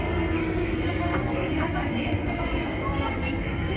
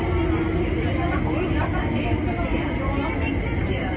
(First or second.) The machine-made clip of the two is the first